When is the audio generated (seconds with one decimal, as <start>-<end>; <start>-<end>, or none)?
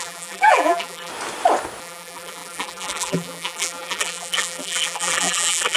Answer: 0.0-1.1; 1.8-5.8